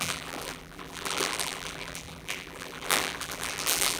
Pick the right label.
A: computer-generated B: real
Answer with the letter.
A